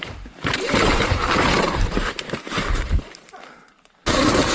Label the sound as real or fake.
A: fake